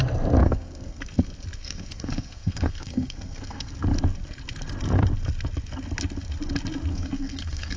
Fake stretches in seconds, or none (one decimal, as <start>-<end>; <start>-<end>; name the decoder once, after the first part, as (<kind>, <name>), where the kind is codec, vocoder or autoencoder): 0.4-1.0 (codec, SNAC); 1.6-3.7; 6.9-7.8